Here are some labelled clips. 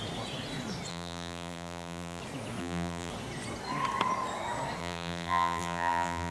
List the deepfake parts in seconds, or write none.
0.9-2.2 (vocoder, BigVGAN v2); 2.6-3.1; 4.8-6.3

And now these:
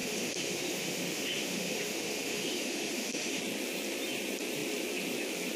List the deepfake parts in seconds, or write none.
0.0-3.4 (autoencoder, DAC-VAE)

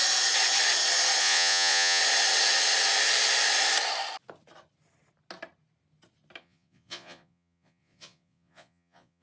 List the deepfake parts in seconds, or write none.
1.2-2.0 (vocoder, Vocos); 6.4-9.2

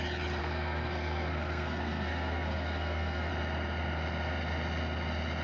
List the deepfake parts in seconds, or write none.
0.4-3.3 (codec, SNAC)

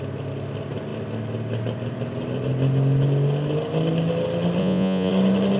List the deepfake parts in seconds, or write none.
4.6-5.1 (vocoder, Vocos)